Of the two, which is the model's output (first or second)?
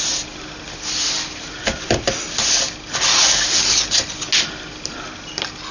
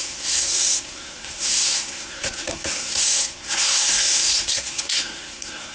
second